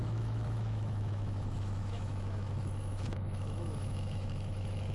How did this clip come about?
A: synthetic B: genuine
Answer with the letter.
A